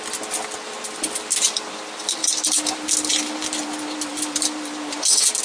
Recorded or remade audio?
recorded